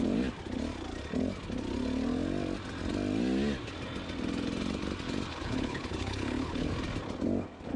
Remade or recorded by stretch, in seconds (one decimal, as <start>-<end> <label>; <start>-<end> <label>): 0.0-5.3 recorded; 5.3-6.7 remade; 6.7-7.8 recorded